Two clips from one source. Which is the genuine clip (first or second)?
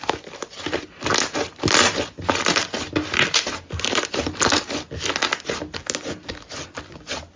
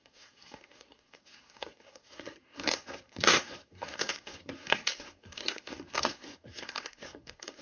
first